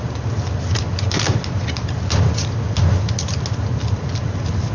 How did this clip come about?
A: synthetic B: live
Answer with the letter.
B